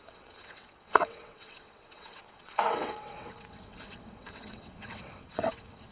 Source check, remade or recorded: remade